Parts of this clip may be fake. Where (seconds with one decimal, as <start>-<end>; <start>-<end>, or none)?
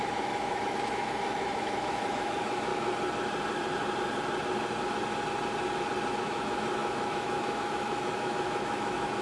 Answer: 0.0-2.7; 6.2-9.2